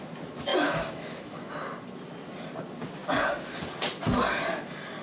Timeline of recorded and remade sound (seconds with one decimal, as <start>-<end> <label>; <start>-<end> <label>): 0.0-0.5 recorded; 0.5-1.5 remade; 1.5-5.0 recorded